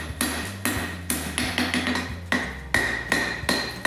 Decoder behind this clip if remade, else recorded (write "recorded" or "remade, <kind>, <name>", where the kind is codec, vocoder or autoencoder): recorded